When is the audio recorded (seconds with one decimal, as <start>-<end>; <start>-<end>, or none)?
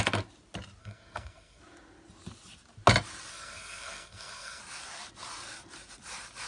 0.0-0.8; 1.6-3.3; 4.6-6.5